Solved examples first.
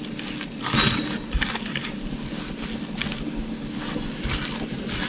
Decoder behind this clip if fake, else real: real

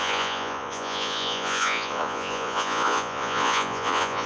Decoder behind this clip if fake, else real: fake, vocoder, Vocos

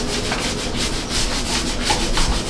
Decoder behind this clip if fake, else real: real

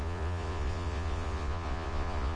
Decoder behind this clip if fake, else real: fake, vocoder, Vocos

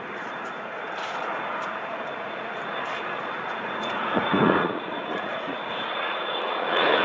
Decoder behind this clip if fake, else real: fake, vocoder, Vocos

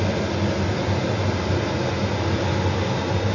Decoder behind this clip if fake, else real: real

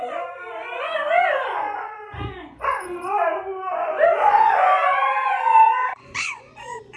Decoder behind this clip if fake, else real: fake, vocoder, Vocos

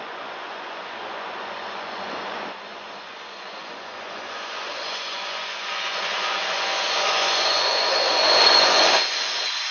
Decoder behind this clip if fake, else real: fake, vocoder, Vocos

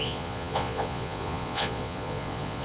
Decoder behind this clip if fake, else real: fake, vocoder, Vocos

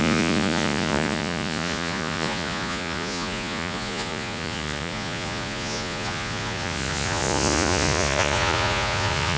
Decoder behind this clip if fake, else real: fake, vocoder, Vocos